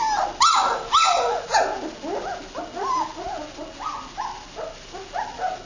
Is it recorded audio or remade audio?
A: recorded